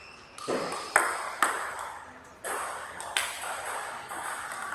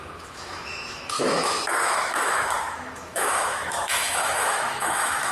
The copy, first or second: second